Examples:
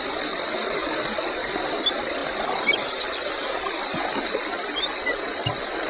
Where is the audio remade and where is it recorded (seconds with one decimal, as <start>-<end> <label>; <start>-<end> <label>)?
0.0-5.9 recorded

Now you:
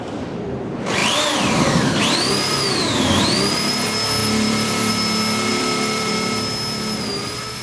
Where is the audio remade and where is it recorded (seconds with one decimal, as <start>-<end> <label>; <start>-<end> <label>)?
0.0-1.0 recorded; 1.0-2.9 remade; 2.9-4.2 recorded; 4.2-4.9 remade; 4.9-5.5 recorded; 5.5-6.1 remade; 6.1-7.6 recorded

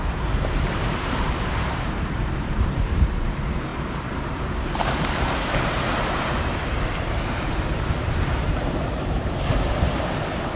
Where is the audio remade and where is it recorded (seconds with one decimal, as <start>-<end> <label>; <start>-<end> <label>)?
0.0-10.6 remade

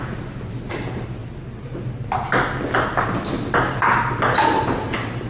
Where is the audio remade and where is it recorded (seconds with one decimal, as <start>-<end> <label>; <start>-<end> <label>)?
0.0-1.2 remade; 1.2-4.4 recorded; 4.4-5.3 remade

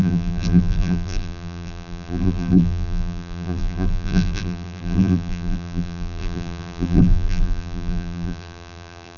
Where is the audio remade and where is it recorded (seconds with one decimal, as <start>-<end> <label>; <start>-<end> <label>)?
0.0-9.2 remade

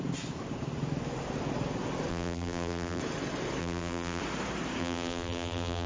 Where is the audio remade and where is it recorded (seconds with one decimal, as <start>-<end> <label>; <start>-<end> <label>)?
0.0-2.1 recorded; 2.1-3.0 remade; 3.0-3.6 recorded; 3.6-4.2 remade; 4.2-4.8 recorded; 4.8-5.9 remade